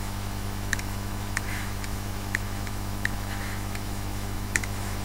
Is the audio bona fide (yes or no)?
no